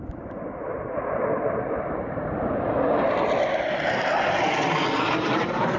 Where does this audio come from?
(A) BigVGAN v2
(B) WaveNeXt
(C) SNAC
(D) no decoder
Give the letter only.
D